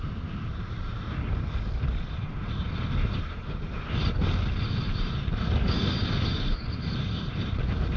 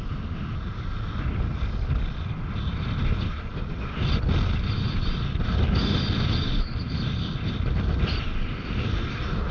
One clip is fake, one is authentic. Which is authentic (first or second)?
second